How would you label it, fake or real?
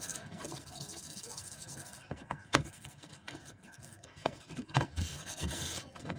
fake